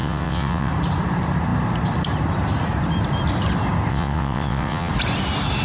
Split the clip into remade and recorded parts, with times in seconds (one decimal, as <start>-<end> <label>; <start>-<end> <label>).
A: 0.0-0.7 remade; 0.7-3.9 recorded; 3.9-4.9 remade; 4.9-5.6 recorded